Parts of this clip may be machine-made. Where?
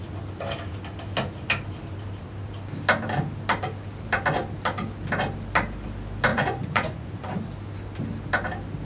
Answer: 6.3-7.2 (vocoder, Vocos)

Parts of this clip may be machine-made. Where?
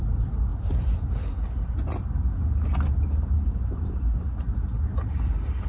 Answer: none